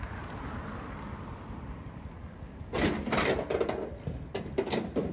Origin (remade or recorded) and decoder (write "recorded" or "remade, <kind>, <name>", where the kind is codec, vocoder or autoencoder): recorded